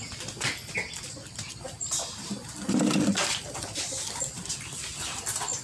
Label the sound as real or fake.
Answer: real